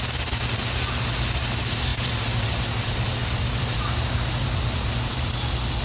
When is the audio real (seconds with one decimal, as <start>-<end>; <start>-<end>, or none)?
0.0-1.9